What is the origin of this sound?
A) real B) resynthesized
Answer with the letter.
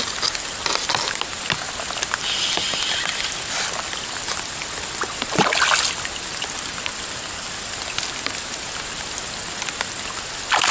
A